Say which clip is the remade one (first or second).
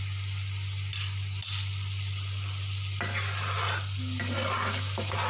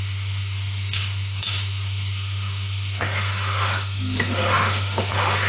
second